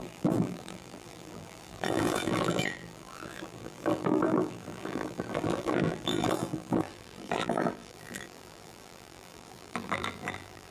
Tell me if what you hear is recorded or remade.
remade